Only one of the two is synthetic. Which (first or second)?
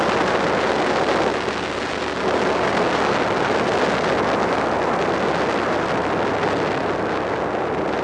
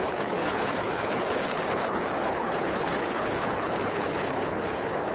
second